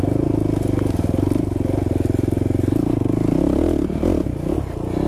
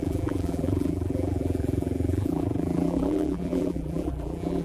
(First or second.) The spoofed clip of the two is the second